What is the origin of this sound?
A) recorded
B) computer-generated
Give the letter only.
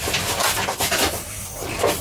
B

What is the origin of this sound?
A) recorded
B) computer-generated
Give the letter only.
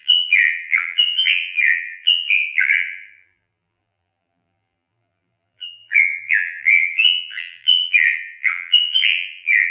B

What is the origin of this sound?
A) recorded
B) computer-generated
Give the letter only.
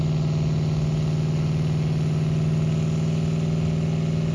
A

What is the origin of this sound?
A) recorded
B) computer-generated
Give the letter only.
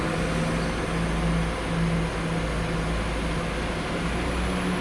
A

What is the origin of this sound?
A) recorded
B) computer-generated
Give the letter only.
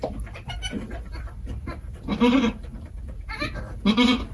A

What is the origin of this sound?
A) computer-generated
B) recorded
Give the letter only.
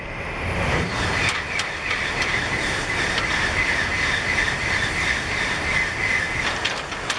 B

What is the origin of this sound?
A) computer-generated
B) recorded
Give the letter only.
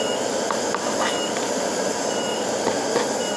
B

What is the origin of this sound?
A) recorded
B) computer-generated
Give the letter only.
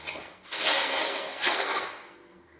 B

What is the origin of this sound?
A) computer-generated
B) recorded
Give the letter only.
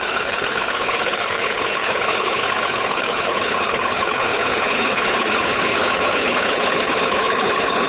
A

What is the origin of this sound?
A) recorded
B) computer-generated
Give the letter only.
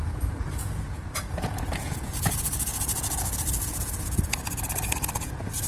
B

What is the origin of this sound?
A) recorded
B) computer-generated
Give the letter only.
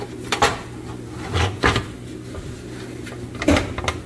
A